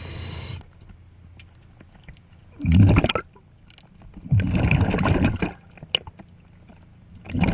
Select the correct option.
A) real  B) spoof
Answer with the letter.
A